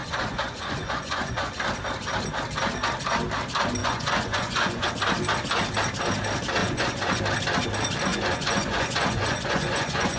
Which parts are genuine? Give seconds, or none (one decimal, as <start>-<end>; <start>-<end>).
1.5-3.8; 4.9-6.6; 7.2-8.1